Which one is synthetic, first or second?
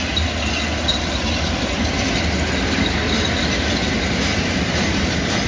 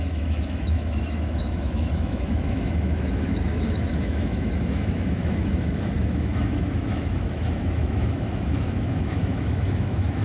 second